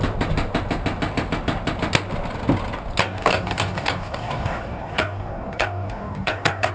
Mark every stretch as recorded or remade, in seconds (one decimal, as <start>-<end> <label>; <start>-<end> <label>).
0.0-3.0 recorded; 3.0-6.7 remade